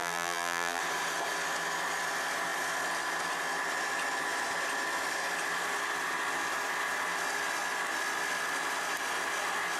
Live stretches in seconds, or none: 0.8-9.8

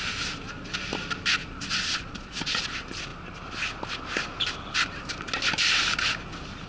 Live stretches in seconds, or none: 0.0-1.4; 2.6-6.7

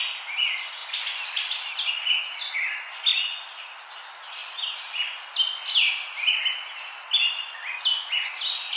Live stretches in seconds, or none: 0.0-8.8

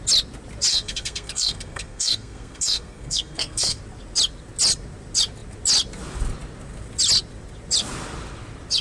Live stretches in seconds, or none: 0.0-0.7; 3.8-8.8

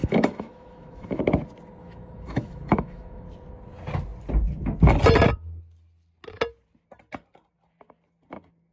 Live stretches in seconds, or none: 1.2-1.8; 3.2-8.7